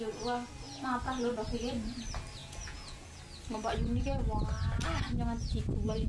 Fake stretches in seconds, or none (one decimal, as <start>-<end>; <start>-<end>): 2.4-3.2